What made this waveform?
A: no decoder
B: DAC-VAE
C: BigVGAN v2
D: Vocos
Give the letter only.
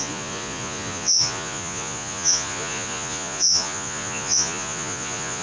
D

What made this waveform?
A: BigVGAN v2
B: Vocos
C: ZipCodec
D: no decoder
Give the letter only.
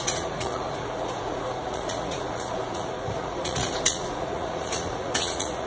B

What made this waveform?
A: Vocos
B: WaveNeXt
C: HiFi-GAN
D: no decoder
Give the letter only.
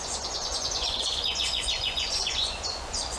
A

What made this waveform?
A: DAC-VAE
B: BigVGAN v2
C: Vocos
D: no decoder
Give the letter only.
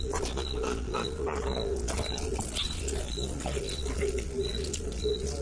C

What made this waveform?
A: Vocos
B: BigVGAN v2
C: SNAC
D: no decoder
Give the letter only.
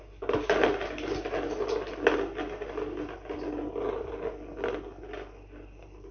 D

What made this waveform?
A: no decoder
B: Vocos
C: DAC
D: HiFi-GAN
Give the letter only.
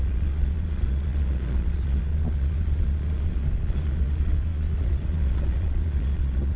B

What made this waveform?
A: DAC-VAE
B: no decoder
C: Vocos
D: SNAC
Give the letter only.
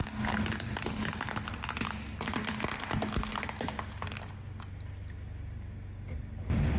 B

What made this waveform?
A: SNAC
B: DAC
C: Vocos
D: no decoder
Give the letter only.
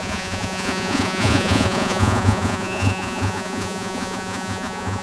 C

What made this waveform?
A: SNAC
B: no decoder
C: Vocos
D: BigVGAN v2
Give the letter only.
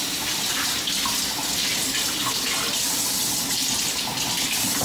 B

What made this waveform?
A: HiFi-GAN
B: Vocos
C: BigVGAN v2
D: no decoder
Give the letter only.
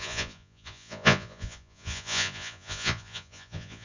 B